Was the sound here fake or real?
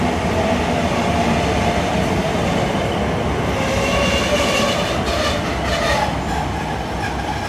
real